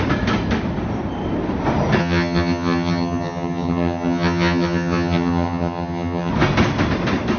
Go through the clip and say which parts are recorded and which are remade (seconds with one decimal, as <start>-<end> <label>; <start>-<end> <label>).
0.0-2.0 recorded; 2.0-6.3 remade; 6.3-7.4 recorded